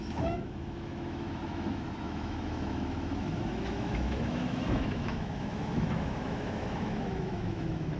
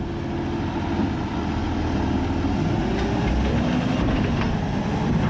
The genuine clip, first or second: second